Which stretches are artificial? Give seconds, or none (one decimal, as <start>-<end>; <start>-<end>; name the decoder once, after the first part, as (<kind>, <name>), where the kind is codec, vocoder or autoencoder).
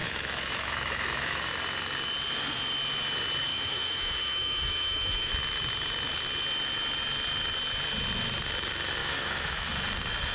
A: 0.0-1.5 (autoencoder, DAC-VAE); 3.5-5.3; 9.0-9.7